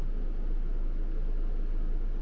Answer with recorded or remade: recorded